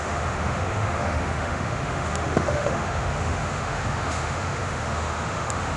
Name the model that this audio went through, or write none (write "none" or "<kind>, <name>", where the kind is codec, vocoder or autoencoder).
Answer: autoencoder, DAC-VAE